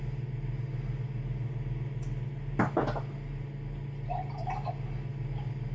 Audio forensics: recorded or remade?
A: recorded